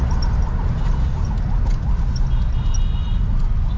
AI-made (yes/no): no